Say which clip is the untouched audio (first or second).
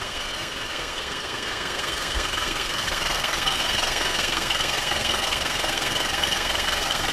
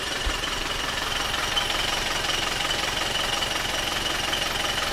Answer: second